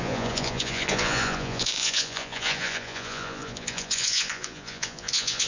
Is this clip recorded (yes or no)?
no